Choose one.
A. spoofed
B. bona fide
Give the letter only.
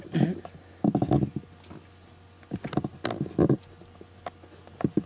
B